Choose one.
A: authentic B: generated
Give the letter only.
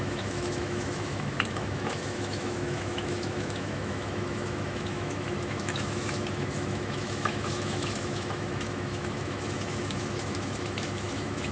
B